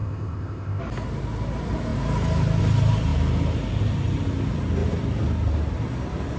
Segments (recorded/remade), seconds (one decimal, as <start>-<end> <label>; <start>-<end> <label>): 0.0-0.8 remade; 0.8-6.4 recorded